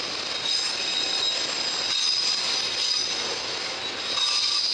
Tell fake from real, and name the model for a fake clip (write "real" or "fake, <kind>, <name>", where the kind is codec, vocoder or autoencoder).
real